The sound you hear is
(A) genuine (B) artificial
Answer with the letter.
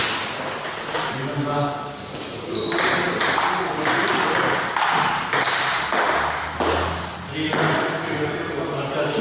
A